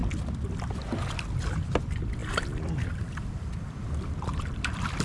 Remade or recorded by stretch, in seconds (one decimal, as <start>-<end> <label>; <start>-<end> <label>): 0.0-1.8 recorded; 1.8-2.2 remade; 2.2-2.9 recorded; 2.9-5.0 remade